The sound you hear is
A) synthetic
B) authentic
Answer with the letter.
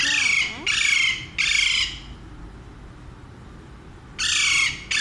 B